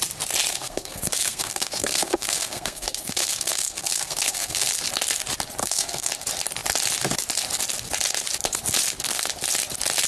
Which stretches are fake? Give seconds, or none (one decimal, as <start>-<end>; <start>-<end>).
0.5-4.7; 5.6-6.1